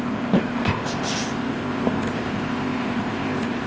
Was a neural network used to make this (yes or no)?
yes